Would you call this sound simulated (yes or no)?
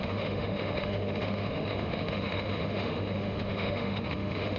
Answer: yes